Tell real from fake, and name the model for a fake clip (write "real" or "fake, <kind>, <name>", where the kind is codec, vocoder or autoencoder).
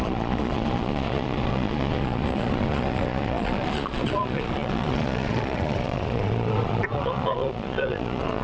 fake, vocoder, Vocos